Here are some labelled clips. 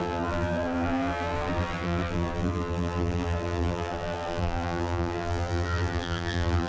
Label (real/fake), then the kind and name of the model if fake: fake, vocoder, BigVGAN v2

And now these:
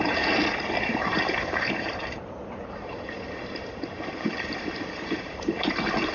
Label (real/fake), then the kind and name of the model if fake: fake, vocoder, BigVGAN v2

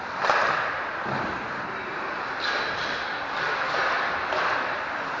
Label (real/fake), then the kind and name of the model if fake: fake, vocoder, BigVGAN v2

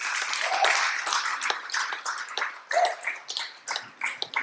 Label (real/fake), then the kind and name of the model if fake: real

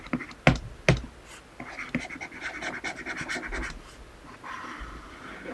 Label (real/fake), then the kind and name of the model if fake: real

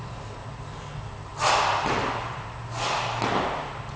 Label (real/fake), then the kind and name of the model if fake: real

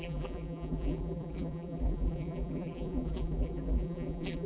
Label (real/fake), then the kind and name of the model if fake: fake, vocoder, BigVGAN v2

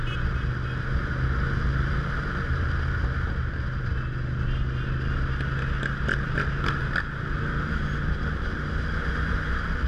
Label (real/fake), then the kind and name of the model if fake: real